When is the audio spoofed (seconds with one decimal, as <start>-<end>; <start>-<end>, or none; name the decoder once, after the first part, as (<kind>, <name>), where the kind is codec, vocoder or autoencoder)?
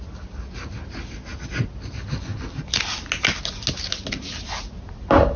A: none